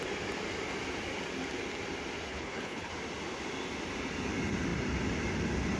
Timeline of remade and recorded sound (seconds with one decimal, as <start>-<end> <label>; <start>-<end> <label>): 0.0-2.3 recorded; 2.3-2.9 remade; 2.9-5.8 recorded